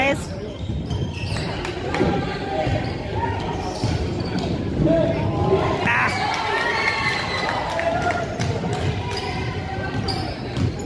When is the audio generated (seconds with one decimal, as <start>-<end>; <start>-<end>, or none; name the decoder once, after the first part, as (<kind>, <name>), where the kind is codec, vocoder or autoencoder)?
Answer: 0.0-2.7 (vocoder, BigVGAN v2); 7.2-10.9

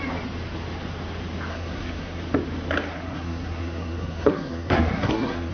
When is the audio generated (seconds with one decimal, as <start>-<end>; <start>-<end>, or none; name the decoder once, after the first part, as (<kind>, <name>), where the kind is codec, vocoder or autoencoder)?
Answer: 1.5-2.2 (codec, SNAC); 2.9-5.5

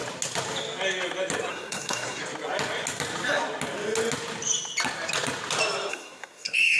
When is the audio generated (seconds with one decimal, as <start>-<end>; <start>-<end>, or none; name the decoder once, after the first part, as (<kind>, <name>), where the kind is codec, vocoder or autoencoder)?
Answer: 1.5-2.2 (codec, SNAC); 5.9-6.8

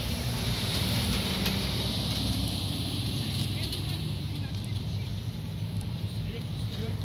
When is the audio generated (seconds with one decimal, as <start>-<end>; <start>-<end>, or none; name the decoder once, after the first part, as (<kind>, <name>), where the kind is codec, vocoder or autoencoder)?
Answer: 0.0-5.1 (vocoder, BigVGAN v2); 5.6-7.0

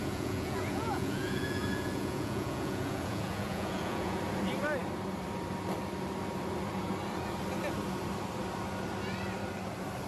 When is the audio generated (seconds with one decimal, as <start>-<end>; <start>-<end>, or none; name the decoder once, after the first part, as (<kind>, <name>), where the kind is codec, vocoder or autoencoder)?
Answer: 0.0-4.2 (vocoder, Vocos)

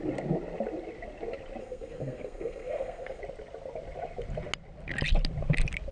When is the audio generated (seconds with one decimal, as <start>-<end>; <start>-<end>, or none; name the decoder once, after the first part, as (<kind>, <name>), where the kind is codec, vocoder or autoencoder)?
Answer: 1.6-3.2 (codec, SNAC)

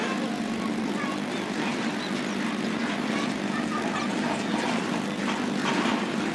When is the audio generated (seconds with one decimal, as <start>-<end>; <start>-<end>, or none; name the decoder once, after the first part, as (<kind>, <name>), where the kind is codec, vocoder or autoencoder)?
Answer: none

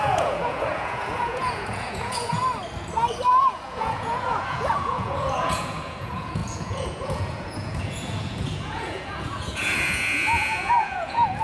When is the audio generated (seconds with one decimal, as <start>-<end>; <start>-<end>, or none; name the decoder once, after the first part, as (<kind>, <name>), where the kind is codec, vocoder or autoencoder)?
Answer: 0.0-2.4 (vocoder, Vocos); 3.3-11.4